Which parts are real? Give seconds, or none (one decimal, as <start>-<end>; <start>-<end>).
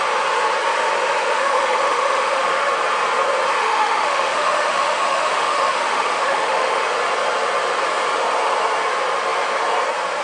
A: 0.0-1.2; 2.7-3.6; 6.8-10.2